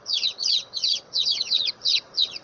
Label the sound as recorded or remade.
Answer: remade